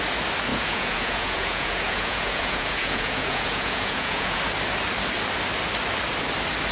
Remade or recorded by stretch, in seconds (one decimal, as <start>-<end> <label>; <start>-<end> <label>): 0.0-0.5 recorded; 0.5-4.4 remade; 4.4-6.7 recorded